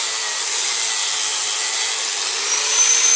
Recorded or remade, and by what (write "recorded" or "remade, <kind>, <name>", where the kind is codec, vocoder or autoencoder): recorded